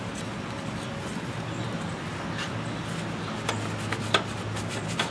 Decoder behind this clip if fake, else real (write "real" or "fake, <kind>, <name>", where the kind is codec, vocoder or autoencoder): real